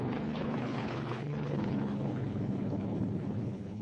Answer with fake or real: fake